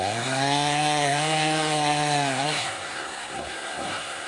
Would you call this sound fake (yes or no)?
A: yes